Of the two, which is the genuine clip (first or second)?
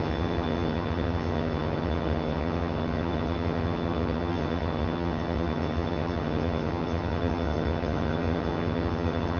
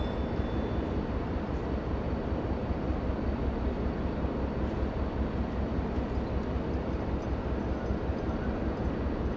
second